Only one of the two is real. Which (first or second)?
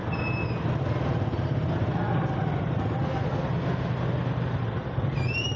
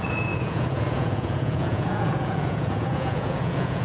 first